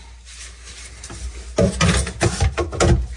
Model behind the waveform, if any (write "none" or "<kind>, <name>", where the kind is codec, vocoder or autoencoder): none